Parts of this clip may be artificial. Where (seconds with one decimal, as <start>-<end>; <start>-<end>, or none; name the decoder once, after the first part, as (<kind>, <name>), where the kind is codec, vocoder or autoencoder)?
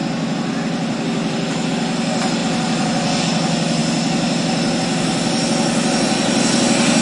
0.0-1.7 (vocoder, BigVGAN v2); 2.4-3.2